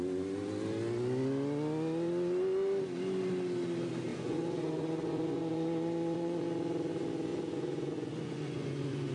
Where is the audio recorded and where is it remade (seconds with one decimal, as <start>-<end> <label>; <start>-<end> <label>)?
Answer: 0.0-4.1 recorded; 4.1-6.4 remade; 6.4-7.3 recorded; 7.3-9.1 remade